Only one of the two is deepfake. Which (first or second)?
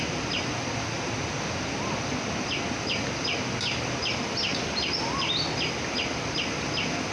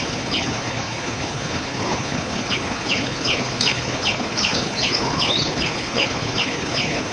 second